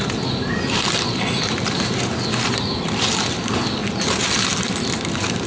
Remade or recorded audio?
recorded